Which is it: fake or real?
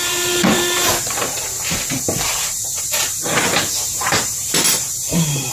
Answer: fake